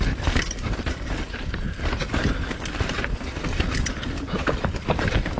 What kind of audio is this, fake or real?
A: real